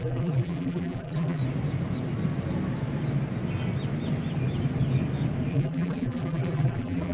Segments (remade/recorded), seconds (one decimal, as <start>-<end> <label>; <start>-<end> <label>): 0.0-1.4 remade; 1.4-5.5 recorded; 5.5-7.1 remade